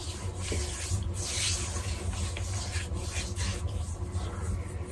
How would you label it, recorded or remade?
recorded